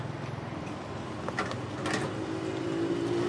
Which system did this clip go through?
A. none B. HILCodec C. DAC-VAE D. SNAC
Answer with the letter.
A